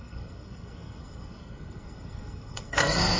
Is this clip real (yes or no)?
no